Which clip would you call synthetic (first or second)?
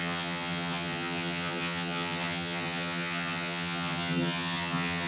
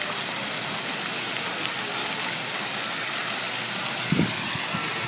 first